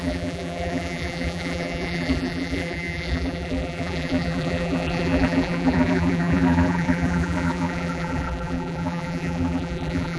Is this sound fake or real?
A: fake